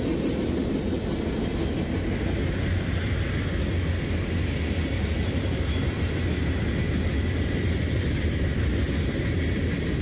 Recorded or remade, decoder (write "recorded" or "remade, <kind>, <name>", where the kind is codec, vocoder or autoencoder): recorded